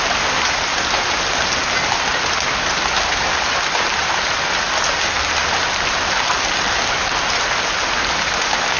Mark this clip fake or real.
real